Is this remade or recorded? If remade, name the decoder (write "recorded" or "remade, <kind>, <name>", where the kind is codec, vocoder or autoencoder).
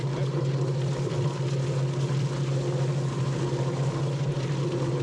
recorded